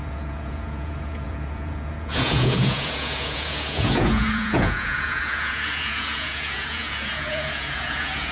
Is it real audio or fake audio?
fake